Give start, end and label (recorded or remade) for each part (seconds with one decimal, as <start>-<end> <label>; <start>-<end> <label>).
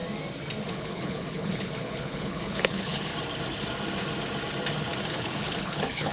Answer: 0.0-0.7 recorded; 0.7-3.1 remade; 3.1-5.0 recorded; 5.0-6.1 remade